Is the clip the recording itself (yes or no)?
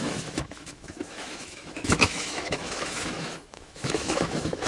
no